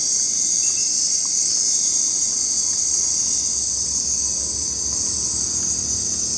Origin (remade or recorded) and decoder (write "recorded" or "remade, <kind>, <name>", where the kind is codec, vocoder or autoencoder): recorded